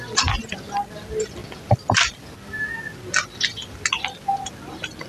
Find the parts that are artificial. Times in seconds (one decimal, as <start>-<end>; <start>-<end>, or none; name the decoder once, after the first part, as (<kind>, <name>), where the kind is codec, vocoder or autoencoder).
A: none